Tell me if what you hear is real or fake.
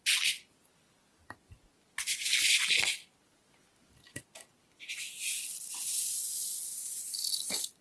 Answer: real